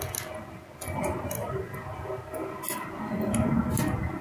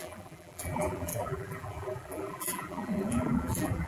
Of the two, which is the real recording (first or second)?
first